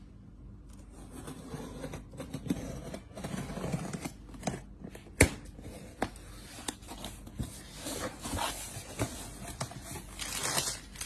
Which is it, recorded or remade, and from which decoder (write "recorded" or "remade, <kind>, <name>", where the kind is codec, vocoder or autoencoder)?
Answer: recorded